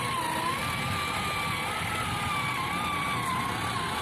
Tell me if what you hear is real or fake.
real